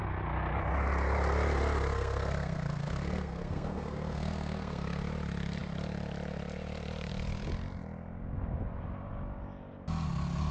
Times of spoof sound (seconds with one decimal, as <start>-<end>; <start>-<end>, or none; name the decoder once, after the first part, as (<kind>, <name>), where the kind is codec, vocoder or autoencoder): 1.9-5.0 (codec, SNAC)

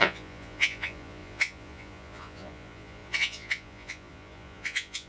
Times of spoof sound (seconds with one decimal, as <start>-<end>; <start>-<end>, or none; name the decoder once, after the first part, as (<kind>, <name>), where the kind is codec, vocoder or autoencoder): 0.0-5.1 (vocoder, Vocos)

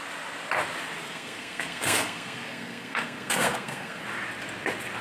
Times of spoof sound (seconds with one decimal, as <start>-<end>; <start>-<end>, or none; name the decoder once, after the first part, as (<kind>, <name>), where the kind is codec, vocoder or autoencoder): 1.0-4.0 (codec, SNAC)

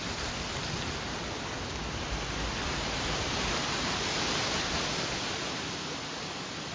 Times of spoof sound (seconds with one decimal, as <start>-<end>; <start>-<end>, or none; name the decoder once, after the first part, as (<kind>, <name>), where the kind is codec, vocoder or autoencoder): none

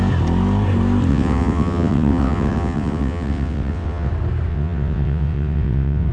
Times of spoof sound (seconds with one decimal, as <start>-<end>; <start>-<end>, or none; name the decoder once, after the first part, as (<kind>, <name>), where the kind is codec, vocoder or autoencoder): 1.1-4.1 (vocoder, WaveNeXt); 4.5-6.1